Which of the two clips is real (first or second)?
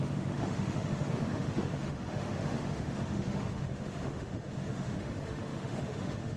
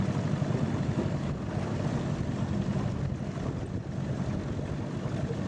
second